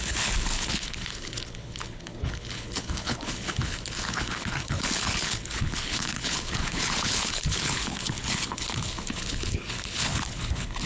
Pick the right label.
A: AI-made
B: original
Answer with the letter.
A